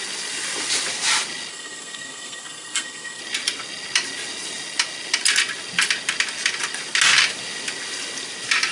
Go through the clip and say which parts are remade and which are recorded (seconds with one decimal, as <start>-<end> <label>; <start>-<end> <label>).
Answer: 0.0-1.5 recorded; 1.5-3.2 remade; 3.2-8.7 recorded